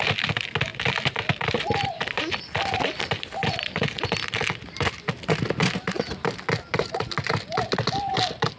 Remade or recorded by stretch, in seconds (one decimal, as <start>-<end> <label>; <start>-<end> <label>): 0.0-0.7 recorded; 0.7-5.1 remade; 5.1-6.7 recorded; 6.7-8.1 remade; 8.1-8.6 recorded